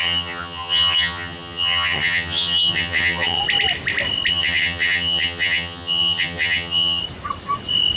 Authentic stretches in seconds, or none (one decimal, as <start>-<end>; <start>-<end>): 3.4-4.3; 7.0-8.0